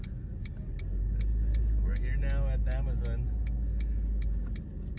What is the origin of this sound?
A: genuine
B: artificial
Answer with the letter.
A